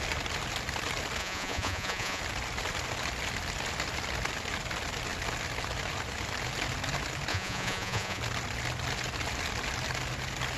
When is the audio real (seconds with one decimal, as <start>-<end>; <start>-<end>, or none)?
0.0-1.2; 2.2-7.3; 8.2-10.6